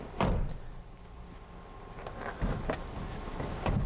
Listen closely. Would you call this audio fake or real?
real